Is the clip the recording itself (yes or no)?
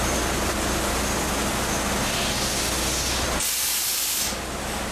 yes